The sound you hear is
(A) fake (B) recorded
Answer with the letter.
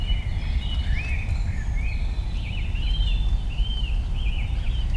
B